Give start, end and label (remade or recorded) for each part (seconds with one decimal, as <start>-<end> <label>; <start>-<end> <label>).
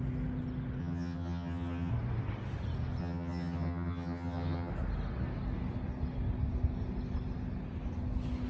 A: 0.0-0.8 recorded; 0.8-1.9 remade; 1.9-3.0 recorded; 3.0-4.7 remade; 4.7-8.5 recorded